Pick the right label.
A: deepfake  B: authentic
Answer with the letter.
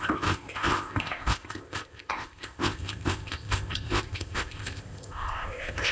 A